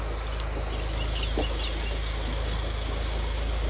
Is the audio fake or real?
real